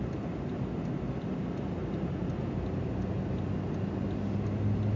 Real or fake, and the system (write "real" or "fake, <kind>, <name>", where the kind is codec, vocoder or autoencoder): real